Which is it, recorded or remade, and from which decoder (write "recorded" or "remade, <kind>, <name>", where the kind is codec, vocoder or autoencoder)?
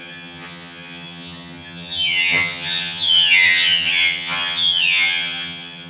remade, vocoder, HiFi-GAN